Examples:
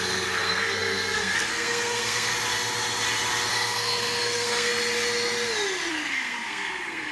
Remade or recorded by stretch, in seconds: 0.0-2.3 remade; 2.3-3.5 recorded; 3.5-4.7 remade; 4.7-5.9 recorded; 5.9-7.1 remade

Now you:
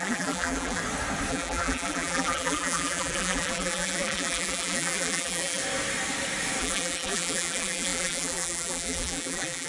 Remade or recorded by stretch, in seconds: 0.0-0.8 remade; 0.8-1.3 recorded; 1.3-5.6 remade; 5.6-6.6 recorded; 6.6-9.7 remade

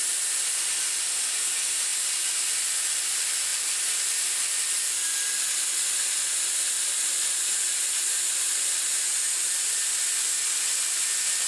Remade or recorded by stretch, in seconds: 0.0-11.5 recorded

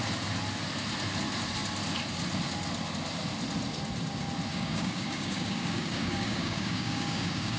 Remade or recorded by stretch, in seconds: 0.0-4.5 recorded; 4.5-7.6 remade

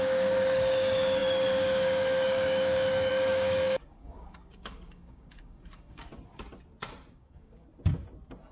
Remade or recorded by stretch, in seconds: 0.0-6.1 remade; 6.1-7.1 recorded; 7.1-7.7 remade; 7.7-8.5 recorded

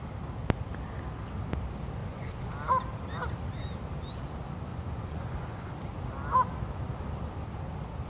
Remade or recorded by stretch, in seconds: 0.0-2.0 recorded; 2.0-2.5 remade; 2.5-4.7 recorded; 4.7-5.7 remade; 5.7-8.1 recorded

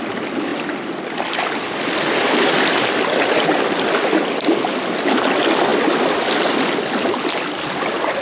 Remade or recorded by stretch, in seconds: 0.0-8.2 recorded